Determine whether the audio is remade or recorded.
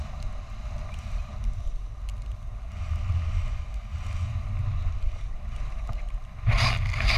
recorded